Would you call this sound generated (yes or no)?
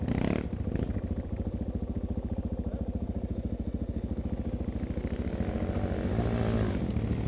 no